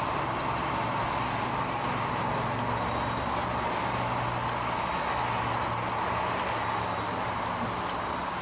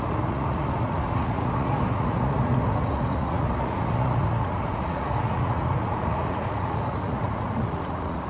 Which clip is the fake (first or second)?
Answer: second